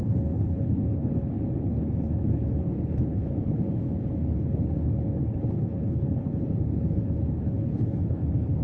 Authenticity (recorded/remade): remade